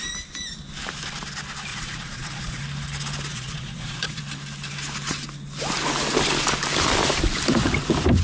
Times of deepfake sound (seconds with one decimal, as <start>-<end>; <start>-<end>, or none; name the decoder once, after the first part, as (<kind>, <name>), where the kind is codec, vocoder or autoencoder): 1.7-2.6 (vocoder, Vocos); 3.3-4.2